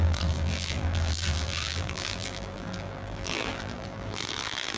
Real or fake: fake